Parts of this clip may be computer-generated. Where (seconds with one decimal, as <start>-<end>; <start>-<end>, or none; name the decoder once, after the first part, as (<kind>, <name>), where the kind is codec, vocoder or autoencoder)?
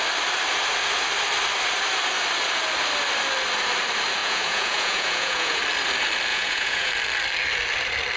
4.2-5.6 (vocoder, Vocos); 6.3-6.9